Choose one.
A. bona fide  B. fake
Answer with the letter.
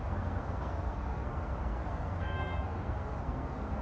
B